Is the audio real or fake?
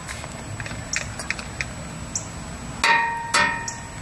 real